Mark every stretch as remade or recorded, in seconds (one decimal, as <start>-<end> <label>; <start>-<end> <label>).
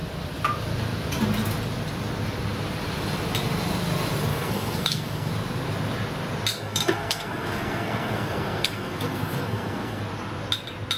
0.0-4.3 recorded; 4.3-5.3 remade; 5.3-6.5 recorded; 6.5-10.0 remade; 10.0-11.0 recorded